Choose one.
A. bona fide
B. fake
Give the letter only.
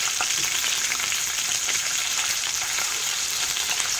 B